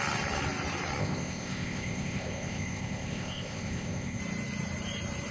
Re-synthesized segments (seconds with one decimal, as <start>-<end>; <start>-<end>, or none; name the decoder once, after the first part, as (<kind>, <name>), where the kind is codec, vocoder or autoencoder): 1.0-4.2 (codec, ZipCodec)